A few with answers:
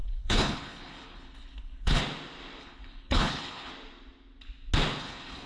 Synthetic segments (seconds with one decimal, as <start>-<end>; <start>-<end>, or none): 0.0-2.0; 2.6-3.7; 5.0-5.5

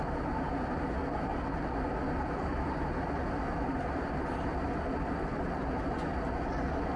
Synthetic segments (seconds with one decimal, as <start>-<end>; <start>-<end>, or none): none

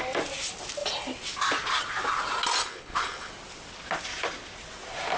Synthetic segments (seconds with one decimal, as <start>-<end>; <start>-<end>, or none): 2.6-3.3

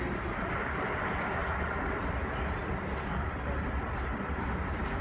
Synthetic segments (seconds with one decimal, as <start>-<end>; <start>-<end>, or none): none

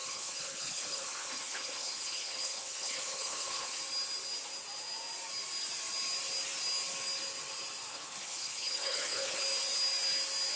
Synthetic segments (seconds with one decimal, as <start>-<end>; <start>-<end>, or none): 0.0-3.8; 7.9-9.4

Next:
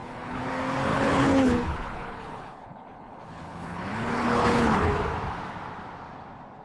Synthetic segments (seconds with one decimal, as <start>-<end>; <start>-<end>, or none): 0.0-0.5; 0.9-4.9